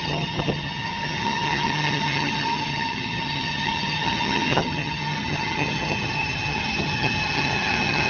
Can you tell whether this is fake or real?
fake